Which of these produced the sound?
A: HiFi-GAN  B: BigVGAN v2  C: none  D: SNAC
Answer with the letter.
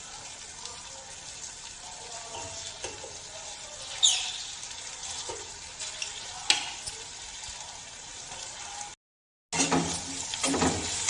C